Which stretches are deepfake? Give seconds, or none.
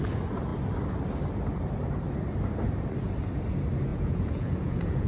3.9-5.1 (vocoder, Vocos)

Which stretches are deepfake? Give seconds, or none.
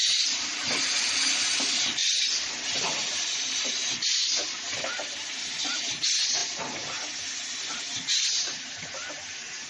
none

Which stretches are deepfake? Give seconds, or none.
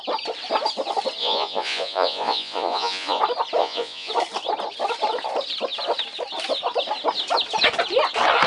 1.2-3.2 (vocoder, Vocos); 3.6-4.1